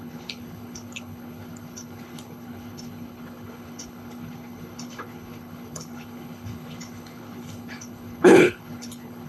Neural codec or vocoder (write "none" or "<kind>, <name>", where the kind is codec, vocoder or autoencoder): codec, HILCodec